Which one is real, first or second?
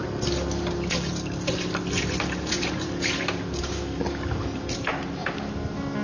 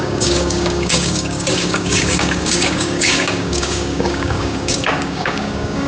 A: first